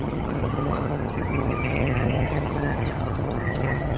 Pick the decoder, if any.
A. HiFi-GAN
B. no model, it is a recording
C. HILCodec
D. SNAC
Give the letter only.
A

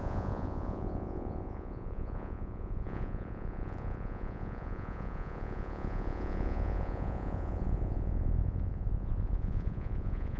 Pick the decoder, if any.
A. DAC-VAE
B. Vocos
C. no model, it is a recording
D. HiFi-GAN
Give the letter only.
B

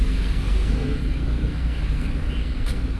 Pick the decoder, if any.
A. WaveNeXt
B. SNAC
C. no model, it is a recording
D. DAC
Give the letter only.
B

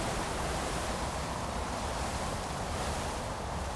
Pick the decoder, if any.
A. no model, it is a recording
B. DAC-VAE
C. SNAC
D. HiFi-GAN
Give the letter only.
A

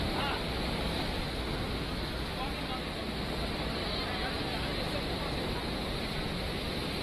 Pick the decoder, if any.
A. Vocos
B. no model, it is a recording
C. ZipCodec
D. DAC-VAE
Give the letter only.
B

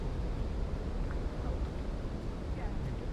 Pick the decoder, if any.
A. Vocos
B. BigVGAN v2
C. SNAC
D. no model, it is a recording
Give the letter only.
D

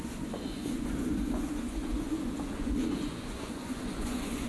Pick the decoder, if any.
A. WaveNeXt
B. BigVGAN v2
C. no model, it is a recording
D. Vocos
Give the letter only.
D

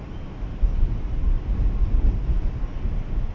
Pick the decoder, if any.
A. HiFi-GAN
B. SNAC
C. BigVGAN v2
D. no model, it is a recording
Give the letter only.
D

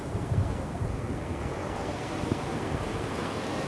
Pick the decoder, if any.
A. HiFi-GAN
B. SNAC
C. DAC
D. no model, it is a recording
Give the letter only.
B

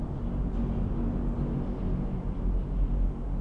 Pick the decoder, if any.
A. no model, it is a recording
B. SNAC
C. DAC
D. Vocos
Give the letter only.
A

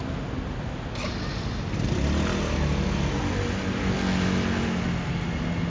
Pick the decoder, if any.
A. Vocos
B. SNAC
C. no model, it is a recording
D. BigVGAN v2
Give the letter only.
C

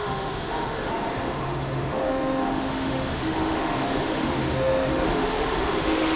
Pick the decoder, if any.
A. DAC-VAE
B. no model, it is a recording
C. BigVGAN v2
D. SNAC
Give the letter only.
A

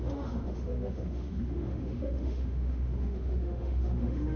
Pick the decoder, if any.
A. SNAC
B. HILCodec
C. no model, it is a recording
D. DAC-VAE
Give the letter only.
D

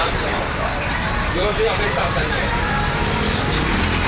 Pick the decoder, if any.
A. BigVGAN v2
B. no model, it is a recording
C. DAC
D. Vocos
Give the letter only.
A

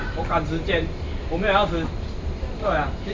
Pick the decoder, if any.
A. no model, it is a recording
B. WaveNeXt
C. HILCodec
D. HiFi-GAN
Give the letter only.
A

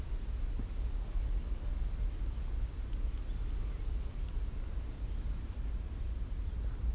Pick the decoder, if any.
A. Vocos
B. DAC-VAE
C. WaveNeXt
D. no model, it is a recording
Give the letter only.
D